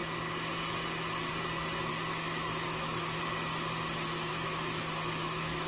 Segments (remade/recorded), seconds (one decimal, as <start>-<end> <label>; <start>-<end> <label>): 0.0-1.9 recorded; 1.9-3.2 remade; 3.2-4.3 recorded; 4.3-5.7 remade